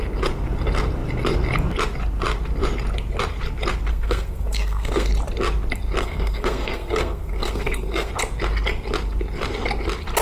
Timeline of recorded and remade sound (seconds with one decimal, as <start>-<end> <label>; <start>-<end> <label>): 0.0-3.9 recorded; 3.9-5.1 remade; 5.1-6.0 recorded; 6.0-8.1 remade; 8.1-10.2 recorded

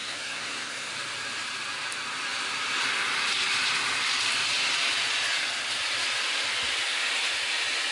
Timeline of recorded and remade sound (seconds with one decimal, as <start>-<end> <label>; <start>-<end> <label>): 0.0-0.9 remade; 0.9-7.9 recorded

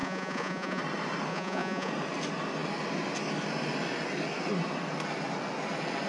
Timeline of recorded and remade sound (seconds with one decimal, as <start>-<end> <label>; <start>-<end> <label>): 0.0-0.8 remade; 0.8-1.3 recorded; 1.3-1.9 remade; 1.9-6.1 recorded

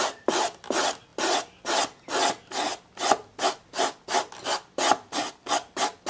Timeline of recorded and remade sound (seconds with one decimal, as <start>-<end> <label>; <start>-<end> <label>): 0.0-6.1 recorded